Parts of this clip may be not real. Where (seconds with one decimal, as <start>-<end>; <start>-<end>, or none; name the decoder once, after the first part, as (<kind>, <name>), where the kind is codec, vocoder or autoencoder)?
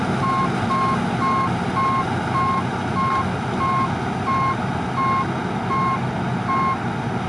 none